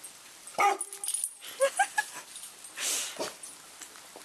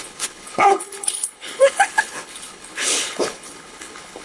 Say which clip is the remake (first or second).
second